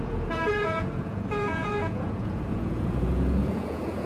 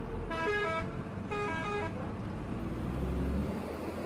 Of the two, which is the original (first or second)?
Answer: second